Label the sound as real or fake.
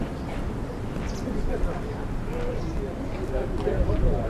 real